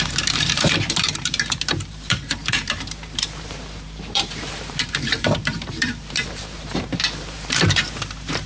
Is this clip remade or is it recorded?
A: remade